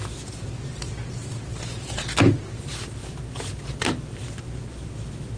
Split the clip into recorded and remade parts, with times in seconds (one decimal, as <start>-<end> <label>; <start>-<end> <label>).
0.0-5.4 recorded